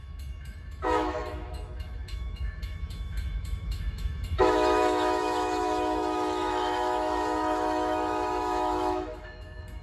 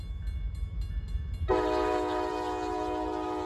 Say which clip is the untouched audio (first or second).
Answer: second